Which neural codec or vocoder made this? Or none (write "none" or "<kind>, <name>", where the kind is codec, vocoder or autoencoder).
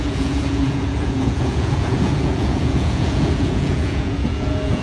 vocoder, Vocos